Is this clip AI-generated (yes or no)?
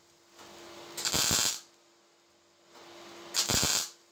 no